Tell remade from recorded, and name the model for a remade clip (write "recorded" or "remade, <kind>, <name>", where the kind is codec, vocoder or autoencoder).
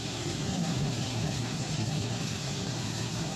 remade, codec, SNAC